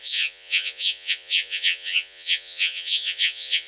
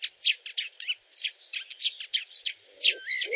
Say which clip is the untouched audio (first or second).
second